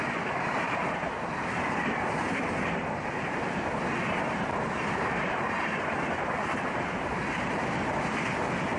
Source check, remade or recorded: recorded